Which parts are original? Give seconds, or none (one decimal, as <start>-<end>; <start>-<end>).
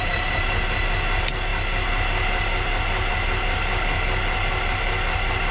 0.0-5.5